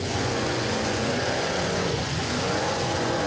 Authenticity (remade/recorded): remade